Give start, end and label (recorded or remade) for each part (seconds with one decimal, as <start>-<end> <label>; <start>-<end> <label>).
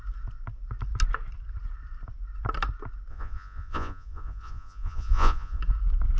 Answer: 0.0-3.1 recorded; 3.1-5.6 remade; 5.6-6.2 recorded